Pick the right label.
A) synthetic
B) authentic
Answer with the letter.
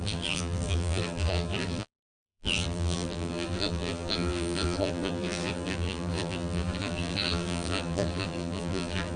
A